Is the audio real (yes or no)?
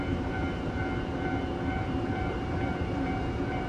no